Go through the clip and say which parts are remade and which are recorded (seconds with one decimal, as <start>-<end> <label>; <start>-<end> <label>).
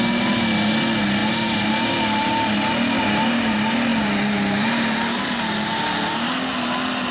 0.0-1.2 recorded; 1.2-1.9 remade; 1.9-7.1 recorded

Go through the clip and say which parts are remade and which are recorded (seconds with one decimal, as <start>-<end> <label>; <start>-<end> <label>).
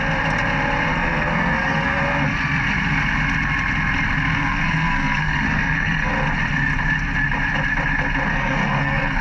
0.0-0.9 recorded; 0.9-2.0 remade; 2.0-4.3 recorded; 4.3-6.1 remade; 6.1-8.3 recorded; 8.3-9.2 remade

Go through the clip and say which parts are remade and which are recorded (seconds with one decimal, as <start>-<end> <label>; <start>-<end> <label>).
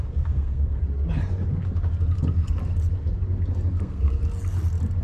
0.0-0.8 remade; 0.8-3.8 recorded; 3.8-4.2 remade; 4.2-5.0 recorded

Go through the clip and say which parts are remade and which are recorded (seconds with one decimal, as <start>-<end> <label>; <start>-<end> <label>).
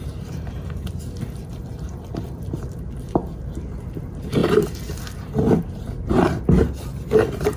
0.0-3.2 remade; 3.2-4.0 recorded; 4.0-7.6 remade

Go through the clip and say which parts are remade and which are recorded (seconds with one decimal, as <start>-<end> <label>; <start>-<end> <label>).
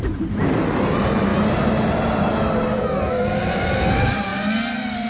0.0-5.1 recorded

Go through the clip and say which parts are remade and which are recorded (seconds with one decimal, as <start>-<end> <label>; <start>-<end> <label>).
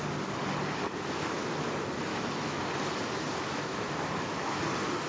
0.0-2.1 recorded; 2.1-2.6 remade; 2.6-3.5 recorded; 3.5-4.6 remade; 4.6-5.1 recorded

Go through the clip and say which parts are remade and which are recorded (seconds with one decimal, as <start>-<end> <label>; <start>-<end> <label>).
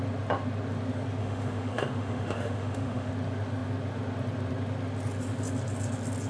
0.0-1.2 recorded; 1.2-3.1 remade; 3.1-6.3 recorded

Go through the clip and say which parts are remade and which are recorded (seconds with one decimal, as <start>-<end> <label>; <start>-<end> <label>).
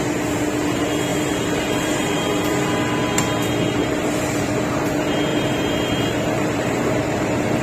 0.0-1.1 recorded; 1.1-2.7 remade; 2.7-3.8 recorded; 3.8-4.8 remade; 4.8-5.3 recorded; 5.3-7.6 remade